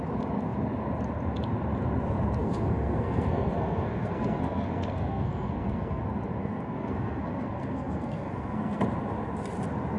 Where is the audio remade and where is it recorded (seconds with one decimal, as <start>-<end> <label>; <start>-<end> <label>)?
0.0-2.4 recorded; 2.4-6.0 remade; 6.0-6.4 recorded; 6.4-8.8 remade; 8.8-10.0 recorded